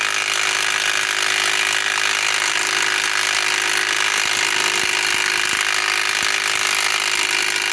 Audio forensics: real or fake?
real